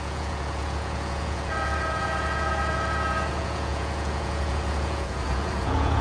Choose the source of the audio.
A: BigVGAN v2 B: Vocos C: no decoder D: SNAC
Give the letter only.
B